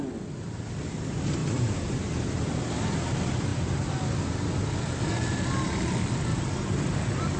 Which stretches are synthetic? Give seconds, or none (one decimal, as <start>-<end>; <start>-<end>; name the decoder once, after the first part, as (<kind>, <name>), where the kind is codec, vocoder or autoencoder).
none